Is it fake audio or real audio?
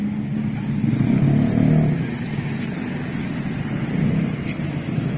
real